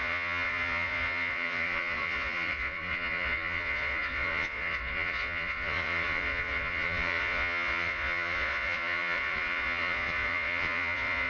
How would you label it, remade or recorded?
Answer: remade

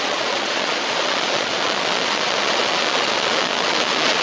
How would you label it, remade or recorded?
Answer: remade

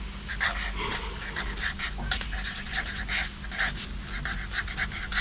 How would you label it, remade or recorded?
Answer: recorded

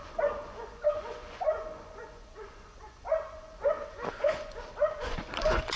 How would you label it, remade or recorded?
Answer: remade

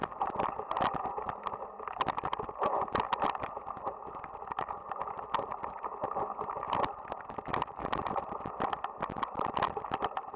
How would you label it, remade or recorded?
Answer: recorded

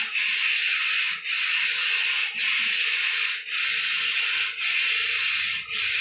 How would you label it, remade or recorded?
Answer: recorded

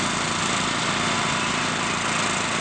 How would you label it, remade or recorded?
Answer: recorded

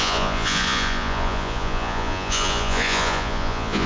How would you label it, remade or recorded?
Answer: remade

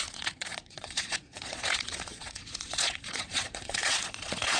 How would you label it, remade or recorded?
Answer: remade